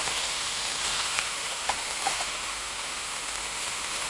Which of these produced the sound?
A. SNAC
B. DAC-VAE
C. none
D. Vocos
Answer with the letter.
B